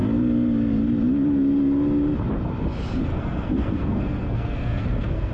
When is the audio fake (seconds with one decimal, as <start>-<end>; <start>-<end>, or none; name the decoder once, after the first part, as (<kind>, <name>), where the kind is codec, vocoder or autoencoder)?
3.1-5.3 (codec, SNAC)